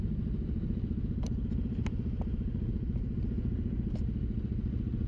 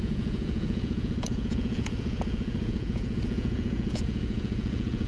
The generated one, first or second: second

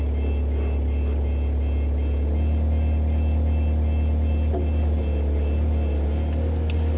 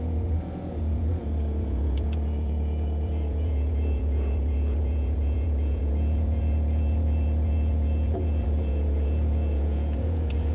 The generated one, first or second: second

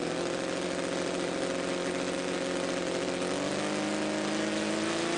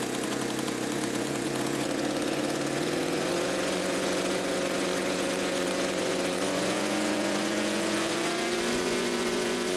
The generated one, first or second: second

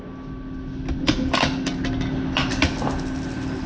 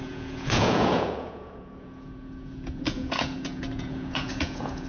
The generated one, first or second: second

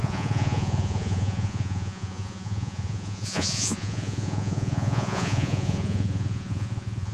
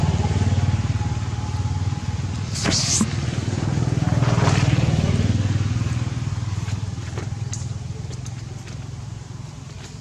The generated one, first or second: first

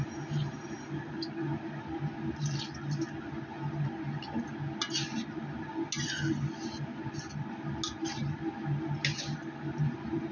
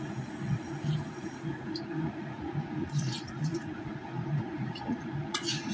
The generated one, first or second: second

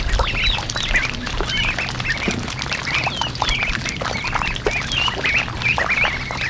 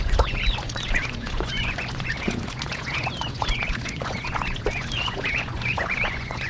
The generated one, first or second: second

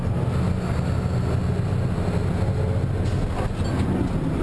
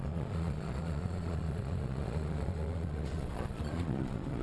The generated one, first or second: second